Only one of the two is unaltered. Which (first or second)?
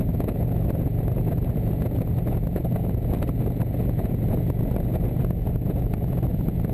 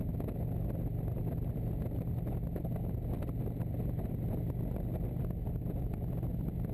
second